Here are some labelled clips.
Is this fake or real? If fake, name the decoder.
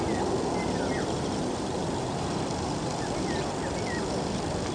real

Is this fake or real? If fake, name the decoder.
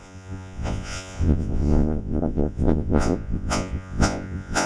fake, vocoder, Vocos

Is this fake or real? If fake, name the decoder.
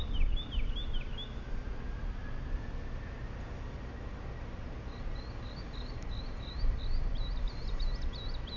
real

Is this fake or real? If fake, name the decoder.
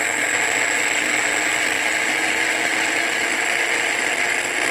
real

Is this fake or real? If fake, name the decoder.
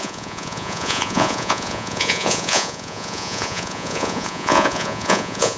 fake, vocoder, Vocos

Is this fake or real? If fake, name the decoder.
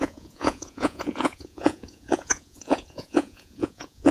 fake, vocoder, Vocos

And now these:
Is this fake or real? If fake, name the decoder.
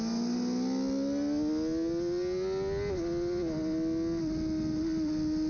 real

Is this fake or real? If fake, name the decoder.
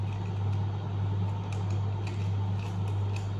real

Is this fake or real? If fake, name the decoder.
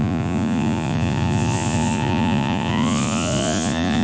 fake, vocoder, Vocos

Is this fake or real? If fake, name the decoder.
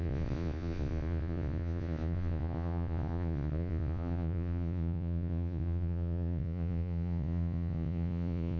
fake, vocoder, Vocos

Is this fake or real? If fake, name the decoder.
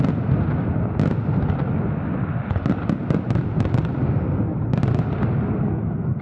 real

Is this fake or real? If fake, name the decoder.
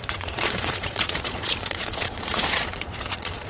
fake, vocoder, Vocos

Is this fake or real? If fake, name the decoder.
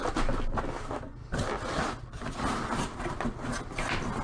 real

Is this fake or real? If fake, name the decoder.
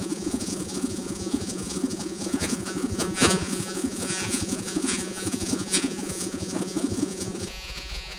fake, vocoder, Vocos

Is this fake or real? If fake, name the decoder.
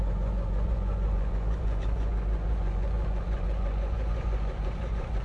fake, vocoder, Vocos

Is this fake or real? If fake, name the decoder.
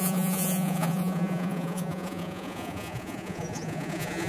fake, vocoder, Vocos